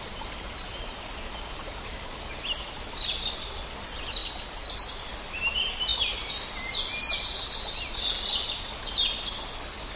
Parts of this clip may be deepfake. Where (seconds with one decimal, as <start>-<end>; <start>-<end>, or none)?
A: none